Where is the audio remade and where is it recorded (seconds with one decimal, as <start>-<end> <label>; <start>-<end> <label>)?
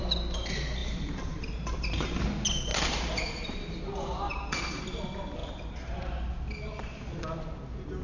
0.0-0.8 recorded; 0.8-2.2 remade; 2.2-2.7 recorded; 2.7-4.8 remade; 4.8-5.4 recorded; 5.4-6.0 remade; 6.0-8.0 recorded